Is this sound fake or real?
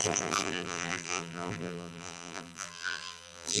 fake